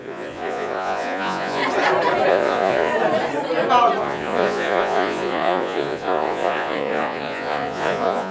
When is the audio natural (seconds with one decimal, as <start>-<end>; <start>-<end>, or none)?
1.6-2.3; 2.9-4.0